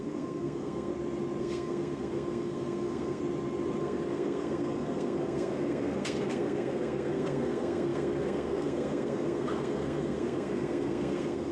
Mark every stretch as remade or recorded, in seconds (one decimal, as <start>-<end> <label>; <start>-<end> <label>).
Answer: 0.0-0.9 remade; 0.9-1.4 recorded; 1.4-3.2 remade; 3.2-3.8 recorded; 3.8-11.5 remade